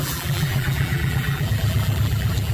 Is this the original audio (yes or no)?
no